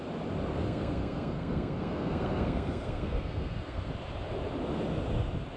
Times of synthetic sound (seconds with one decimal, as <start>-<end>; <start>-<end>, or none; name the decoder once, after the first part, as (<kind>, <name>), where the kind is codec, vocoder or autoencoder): 0.5-3.9 (codec, SNAC)